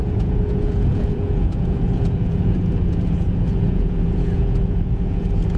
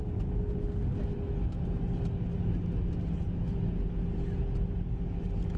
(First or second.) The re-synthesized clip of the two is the first